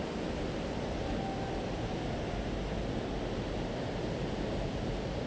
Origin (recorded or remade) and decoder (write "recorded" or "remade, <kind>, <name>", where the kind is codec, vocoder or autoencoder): recorded